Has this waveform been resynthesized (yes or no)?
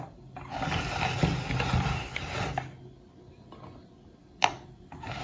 no